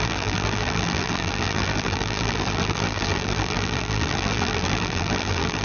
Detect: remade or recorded remade